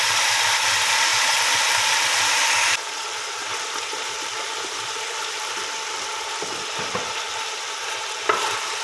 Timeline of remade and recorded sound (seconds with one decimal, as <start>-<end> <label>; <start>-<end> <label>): 0.0-8.8 remade